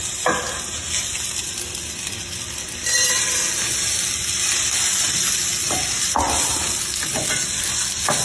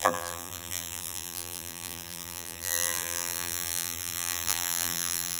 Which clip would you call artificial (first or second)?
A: second